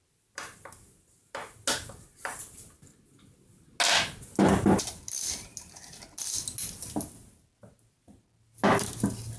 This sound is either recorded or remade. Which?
recorded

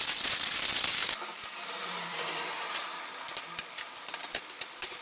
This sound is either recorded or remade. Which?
remade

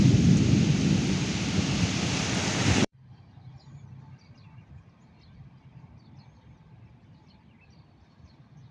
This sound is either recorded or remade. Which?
remade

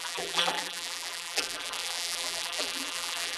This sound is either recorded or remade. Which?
remade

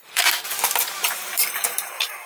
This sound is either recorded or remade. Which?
remade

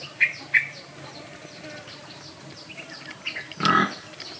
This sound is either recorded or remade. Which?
recorded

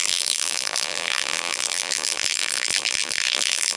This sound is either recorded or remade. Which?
remade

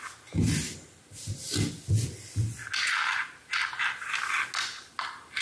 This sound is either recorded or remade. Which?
recorded